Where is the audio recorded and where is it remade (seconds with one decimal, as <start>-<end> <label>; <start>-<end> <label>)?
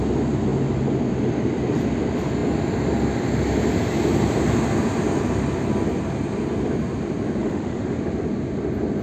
0.0-7.4 recorded; 7.4-8.0 remade; 8.0-9.0 recorded